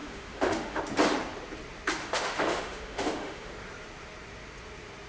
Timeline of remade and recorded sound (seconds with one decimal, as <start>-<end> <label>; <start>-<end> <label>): 0.0-0.8 remade; 0.8-2.0 recorded; 2.0-3.5 remade; 3.5-5.1 recorded